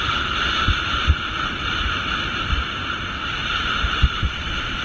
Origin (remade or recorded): recorded